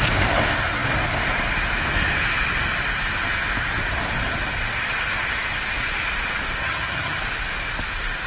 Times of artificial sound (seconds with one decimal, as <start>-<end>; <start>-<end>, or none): 6.6-7.2